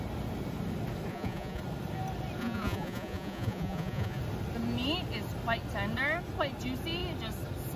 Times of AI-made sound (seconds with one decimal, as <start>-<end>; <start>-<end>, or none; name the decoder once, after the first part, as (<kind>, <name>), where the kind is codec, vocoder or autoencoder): 1.1-1.6 (vocoder, Vocos); 2.4-4.2